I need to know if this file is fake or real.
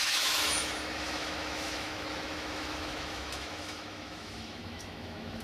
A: fake